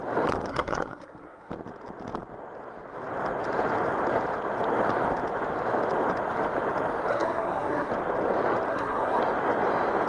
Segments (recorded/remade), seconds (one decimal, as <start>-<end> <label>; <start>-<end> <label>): 0.0-0.5 recorded; 0.5-1.5 remade; 1.5-7.1 recorded; 7.1-7.9 remade; 7.9-8.7 recorded; 8.7-9.2 remade; 9.2-10.1 recorded